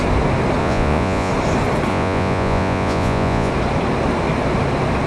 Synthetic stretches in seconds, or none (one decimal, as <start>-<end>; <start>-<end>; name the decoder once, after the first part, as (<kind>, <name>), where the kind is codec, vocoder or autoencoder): 0.6-1.3 (vocoder, Vocos); 1.9-3.5